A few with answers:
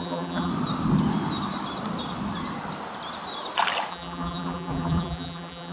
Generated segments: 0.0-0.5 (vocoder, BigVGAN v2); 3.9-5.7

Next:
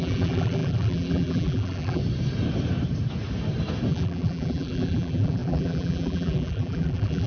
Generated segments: 0.0-2.0 (vocoder, BigVGAN v2); 3.9-7.3

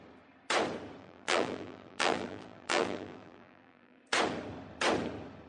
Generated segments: 1.0-4.0 (vocoder, BigVGAN v2)

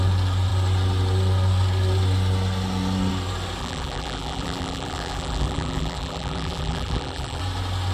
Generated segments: 3.6-7.4 (vocoder, BigVGAN v2)

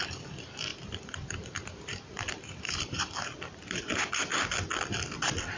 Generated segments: 0.7-4.1 (vocoder, BigVGAN v2)

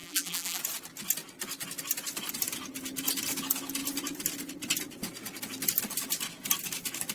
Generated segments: 0.0-0.6 (vocoder, BigVGAN v2)

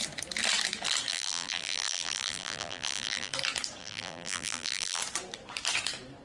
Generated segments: 1.1-3.3 (vocoder, BigVGAN v2); 3.8-5.0

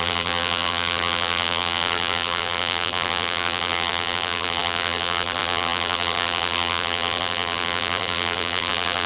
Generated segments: 0.0-9.1 (vocoder, BigVGAN v2)